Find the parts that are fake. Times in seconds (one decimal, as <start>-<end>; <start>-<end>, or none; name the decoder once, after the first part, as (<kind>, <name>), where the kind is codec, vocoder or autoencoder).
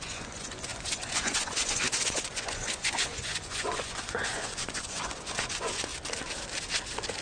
0.0-5.9 (vocoder, Vocos)